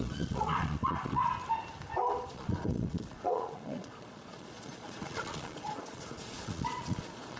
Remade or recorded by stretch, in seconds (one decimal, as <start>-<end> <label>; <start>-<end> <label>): 0.0-1.2 remade; 1.2-2.3 recorded; 2.3-7.4 remade

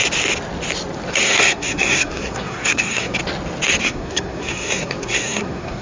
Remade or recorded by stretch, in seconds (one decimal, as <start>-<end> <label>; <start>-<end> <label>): 0.0-1.1 recorded; 1.1-3.2 remade; 3.2-3.8 recorded; 3.8-5.8 remade

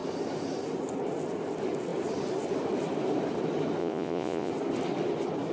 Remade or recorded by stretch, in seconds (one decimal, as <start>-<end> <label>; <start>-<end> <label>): 0.0-3.8 recorded; 3.8-4.5 remade; 4.5-5.5 recorded

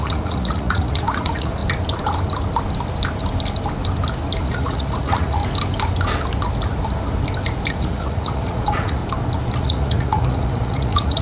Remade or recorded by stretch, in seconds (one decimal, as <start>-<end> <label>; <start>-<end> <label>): 0.0-1.6 remade; 1.6-4.4 recorded; 4.4-5.4 remade; 5.4-7.7 recorded; 7.7-9.0 remade; 9.0-9.6 recorded; 9.6-11.2 remade

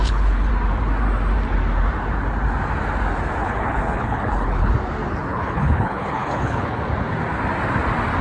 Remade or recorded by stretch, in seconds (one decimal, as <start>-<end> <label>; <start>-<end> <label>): 0.0-0.5 remade; 0.5-3.4 recorded; 3.4-4.7 remade; 4.7-5.3 recorded; 5.3-6.8 remade; 6.8-8.2 recorded